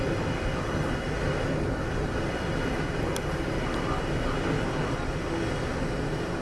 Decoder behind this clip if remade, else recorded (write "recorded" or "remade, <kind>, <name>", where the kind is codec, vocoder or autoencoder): recorded